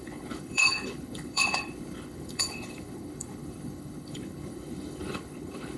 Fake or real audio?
fake